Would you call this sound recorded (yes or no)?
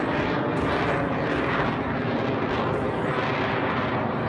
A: yes